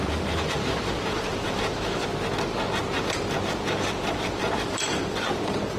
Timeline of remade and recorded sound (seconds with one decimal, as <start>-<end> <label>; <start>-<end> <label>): 0.0-2.1 remade; 2.1-2.7 recorded; 2.7-5.8 remade